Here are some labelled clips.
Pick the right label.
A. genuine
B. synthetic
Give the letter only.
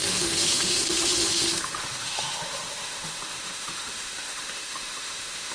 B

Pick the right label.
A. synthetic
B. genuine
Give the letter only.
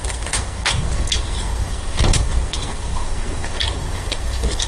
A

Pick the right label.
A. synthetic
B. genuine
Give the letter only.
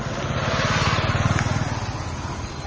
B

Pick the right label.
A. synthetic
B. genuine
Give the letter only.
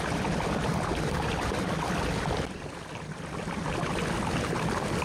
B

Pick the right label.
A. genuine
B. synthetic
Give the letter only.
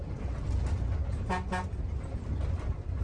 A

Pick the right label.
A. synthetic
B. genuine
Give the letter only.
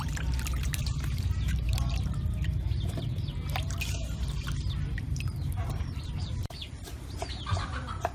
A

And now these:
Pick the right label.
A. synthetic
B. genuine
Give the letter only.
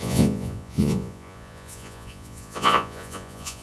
A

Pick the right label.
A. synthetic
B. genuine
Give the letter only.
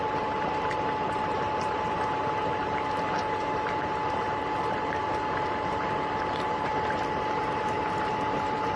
A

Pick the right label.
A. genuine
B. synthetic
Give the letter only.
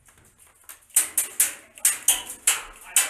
A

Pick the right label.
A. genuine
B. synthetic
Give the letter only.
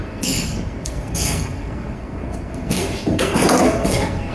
B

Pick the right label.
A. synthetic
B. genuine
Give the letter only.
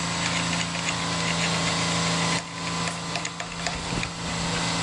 B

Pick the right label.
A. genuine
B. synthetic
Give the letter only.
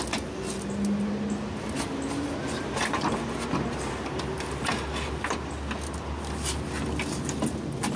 A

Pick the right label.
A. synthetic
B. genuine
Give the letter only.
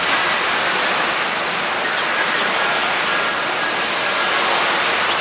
B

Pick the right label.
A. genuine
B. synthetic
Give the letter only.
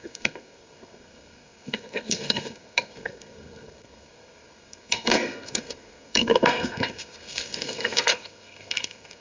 B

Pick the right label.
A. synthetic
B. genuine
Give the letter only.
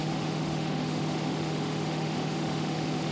A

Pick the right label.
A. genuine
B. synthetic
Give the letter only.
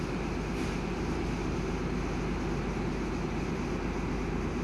A